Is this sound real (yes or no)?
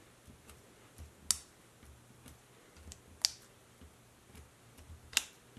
yes